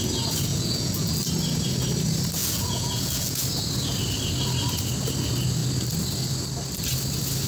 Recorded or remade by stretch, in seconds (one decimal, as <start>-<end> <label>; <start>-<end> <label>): 0.0-0.5 recorded; 0.5-1.1 remade; 1.1-2.4 recorded; 2.4-3.4 remade; 3.4-7.5 recorded